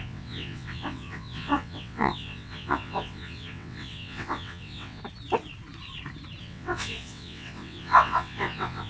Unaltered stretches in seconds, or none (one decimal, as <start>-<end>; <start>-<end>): 5.0-6.4